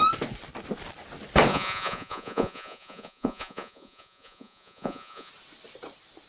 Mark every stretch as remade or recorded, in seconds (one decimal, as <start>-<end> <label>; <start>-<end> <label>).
0.0-1.5 recorded; 1.5-5.3 remade; 5.3-6.3 recorded